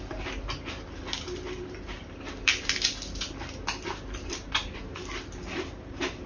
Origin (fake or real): fake